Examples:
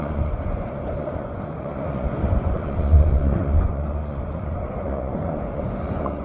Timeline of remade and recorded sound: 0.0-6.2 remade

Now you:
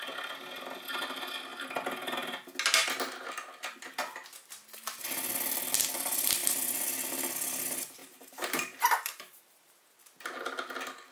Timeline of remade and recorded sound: 0.0-8.0 recorded; 8.0-9.9 remade; 9.9-11.1 recorded